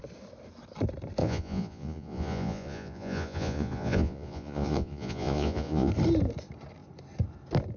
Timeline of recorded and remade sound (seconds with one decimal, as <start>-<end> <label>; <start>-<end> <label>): 0.0-1.2 recorded; 1.2-5.9 remade; 5.9-7.8 recorded